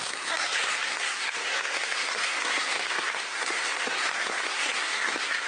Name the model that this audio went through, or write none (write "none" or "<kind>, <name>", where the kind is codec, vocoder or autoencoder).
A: codec, SNAC